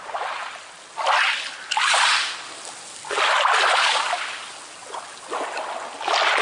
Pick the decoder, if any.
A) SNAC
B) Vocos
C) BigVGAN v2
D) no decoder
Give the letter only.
D